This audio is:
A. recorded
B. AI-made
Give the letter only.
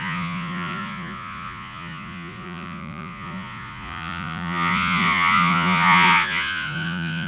B